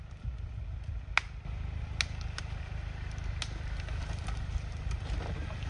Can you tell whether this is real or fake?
real